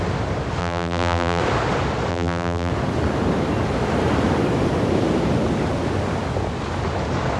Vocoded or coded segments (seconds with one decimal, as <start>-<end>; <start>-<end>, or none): 0.6-1.4; 2.1-2.7